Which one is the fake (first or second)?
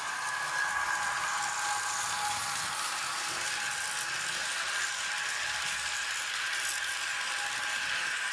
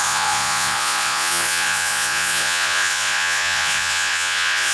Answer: second